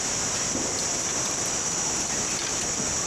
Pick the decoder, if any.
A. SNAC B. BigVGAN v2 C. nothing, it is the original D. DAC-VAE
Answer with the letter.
B